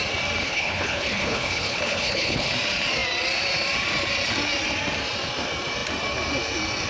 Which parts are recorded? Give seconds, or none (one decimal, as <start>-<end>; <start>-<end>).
0.0-0.4; 2.5-6.9